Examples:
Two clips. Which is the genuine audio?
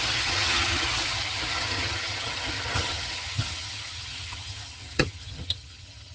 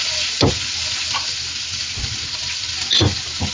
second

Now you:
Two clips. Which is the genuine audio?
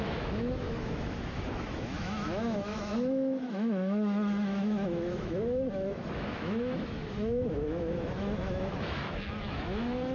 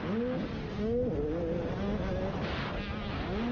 second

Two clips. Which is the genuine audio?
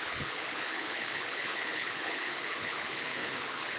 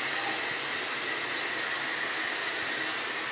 second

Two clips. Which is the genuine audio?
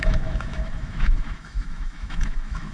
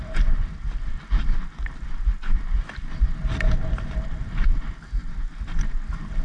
second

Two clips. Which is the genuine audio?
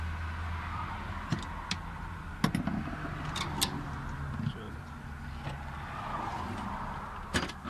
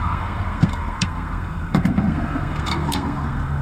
first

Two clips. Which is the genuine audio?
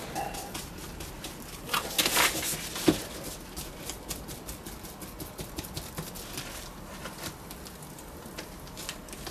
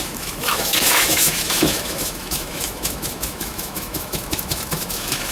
first